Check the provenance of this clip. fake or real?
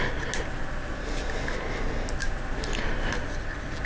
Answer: real